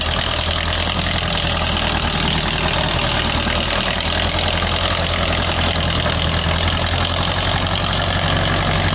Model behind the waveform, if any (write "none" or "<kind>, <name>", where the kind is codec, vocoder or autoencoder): none